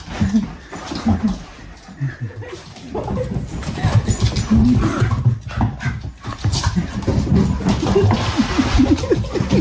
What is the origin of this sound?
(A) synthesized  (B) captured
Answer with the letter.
B